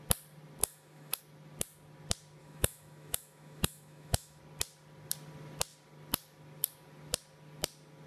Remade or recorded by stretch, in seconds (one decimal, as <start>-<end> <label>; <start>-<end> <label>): 0.0-0.6 recorded; 0.6-1.2 remade; 1.2-2.4 recorded; 2.4-4.4 remade; 4.4-8.1 recorded